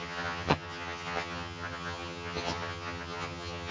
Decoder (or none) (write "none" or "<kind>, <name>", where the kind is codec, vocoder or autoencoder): vocoder, HiFi-GAN